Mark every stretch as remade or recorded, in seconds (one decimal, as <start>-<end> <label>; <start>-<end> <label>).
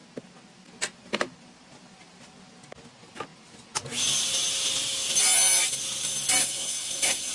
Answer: 0.0-6.4 recorded; 6.4-7.3 remade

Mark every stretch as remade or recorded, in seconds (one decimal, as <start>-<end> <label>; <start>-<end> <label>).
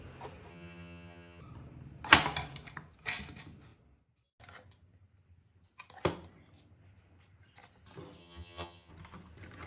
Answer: 0.0-0.5 recorded; 0.5-1.4 remade; 1.4-8.2 recorded; 8.2-8.9 remade; 8.9-9.7 recorded